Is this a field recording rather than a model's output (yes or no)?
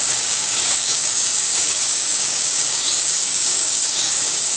no